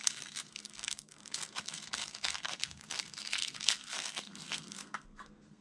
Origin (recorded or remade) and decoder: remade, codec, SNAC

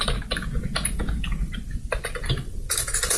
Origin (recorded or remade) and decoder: recorded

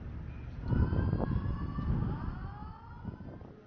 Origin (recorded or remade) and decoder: recorded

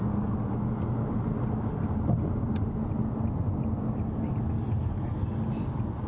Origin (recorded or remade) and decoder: recorded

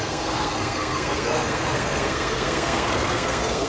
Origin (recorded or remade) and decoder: remade, codec, SNAC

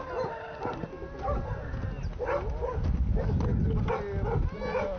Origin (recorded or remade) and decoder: recorded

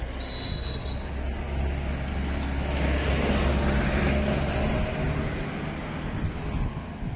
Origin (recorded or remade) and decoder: recorded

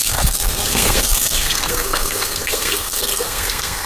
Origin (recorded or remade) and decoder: remade, codec, SNAC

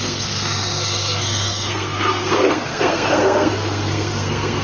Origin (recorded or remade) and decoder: remade, codec, SNAC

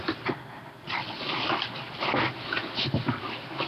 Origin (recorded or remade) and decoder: recorded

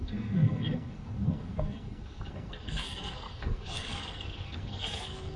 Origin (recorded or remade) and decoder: remade, codec, SNAC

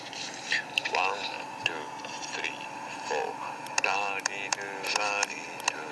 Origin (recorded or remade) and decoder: recorded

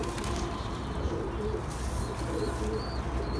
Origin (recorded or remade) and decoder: recorded